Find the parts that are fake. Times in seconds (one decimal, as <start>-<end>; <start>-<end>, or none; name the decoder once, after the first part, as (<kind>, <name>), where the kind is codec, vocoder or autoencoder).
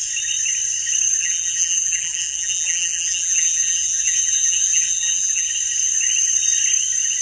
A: 1.2-5.5 (vocoder, BigVGAN v2)